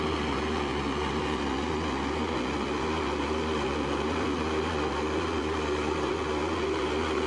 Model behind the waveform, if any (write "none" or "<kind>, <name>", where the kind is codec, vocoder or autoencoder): vocoder, Vocos